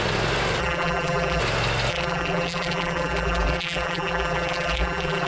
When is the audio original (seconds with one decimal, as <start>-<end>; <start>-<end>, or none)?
0.0-0.6; 1.4-1.9